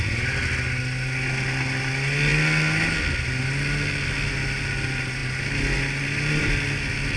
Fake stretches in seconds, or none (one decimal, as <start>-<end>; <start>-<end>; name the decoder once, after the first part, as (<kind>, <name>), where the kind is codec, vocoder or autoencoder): none

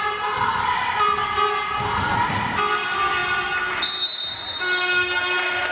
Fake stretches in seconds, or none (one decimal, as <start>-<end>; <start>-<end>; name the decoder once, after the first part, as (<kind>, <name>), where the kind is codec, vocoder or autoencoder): none

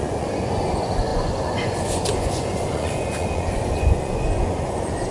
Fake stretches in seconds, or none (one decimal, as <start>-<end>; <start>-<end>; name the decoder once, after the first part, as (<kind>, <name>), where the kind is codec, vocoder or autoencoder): 0.0-5.1 (vocoder, Vocos)

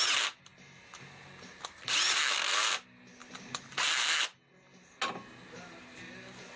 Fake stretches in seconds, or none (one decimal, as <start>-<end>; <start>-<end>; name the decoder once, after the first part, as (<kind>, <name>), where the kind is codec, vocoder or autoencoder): 0.5-2.2 (vocoder, BigVGAN v2); 3.2-4.4

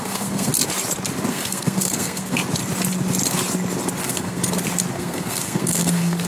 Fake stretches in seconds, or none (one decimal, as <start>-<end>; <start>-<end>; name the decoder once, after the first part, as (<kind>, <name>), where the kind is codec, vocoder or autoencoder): 0.0-0.5 (codec, SNAC); 1.3-2.4; 4.0-4.4; 4.9-6.3

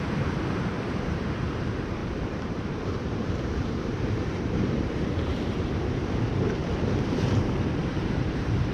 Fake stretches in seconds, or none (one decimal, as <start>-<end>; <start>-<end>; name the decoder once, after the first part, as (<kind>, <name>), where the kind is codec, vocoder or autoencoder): 0.0-8.7 (vocoder, BigVGAN v2)